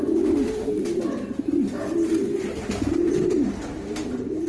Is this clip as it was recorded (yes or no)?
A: yes